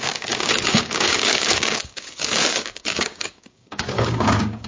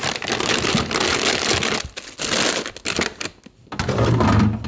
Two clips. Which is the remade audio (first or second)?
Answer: first